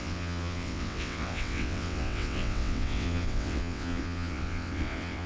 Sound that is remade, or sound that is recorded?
remade